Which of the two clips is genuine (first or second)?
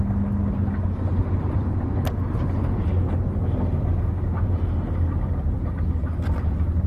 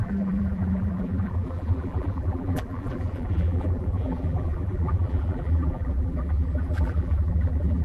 first